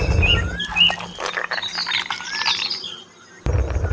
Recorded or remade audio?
recorded